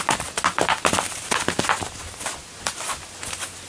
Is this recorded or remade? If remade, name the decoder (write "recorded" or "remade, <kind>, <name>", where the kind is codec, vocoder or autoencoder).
recorded